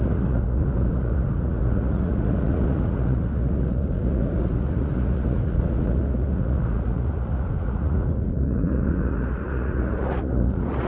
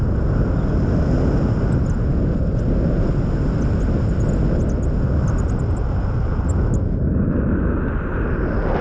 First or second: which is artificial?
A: first